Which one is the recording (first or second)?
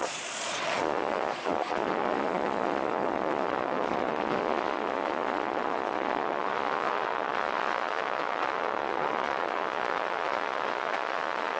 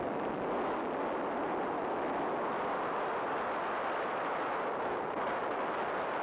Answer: second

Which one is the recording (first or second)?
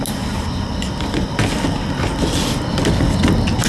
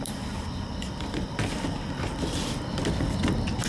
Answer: first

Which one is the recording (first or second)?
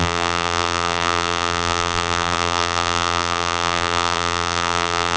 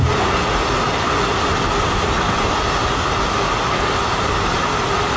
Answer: second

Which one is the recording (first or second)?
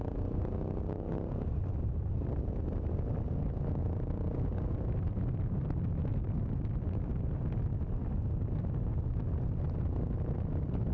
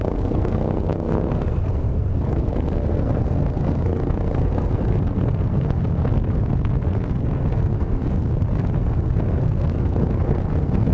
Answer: first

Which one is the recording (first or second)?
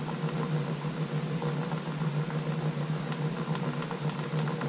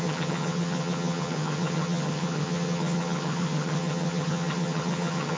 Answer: first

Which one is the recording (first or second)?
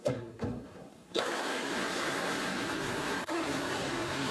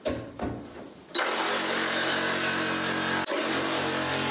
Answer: second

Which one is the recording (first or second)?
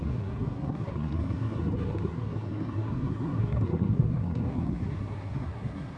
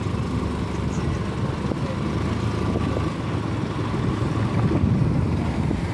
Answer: second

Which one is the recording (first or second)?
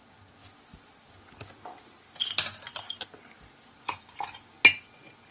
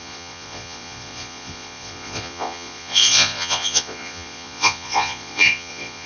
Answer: first